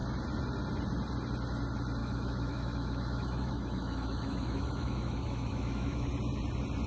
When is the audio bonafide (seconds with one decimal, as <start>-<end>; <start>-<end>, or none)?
0.0-2.0; 6.1-6.9